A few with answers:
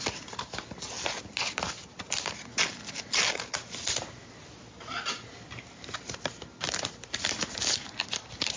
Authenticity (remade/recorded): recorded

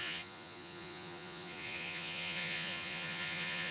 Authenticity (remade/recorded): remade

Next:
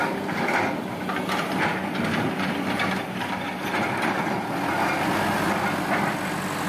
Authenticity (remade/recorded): recorded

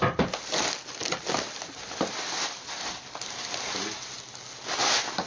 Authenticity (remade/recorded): recorded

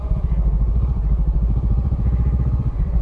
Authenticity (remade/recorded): remade